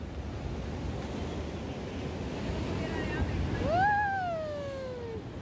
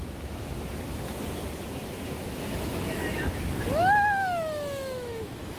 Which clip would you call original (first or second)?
first